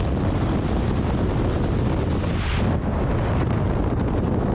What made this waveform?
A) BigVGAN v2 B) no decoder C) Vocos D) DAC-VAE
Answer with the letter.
B